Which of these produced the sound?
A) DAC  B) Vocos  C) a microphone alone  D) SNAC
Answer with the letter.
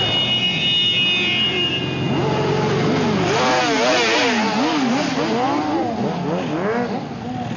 C